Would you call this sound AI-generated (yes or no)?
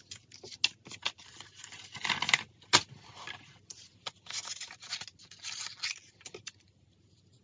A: no